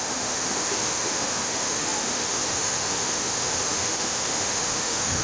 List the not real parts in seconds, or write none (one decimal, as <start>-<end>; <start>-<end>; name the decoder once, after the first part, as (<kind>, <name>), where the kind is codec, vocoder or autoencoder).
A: 0.0-5.2 (autoencoder, DAC-VAE)

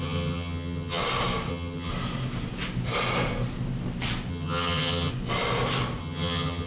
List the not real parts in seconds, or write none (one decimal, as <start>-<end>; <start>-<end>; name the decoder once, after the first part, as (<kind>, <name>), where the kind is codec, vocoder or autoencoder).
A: 0.0-1.0 (vocoder, HiFi-GAN); 1.5-1.9; 4.3-5.1; 6.0-6.7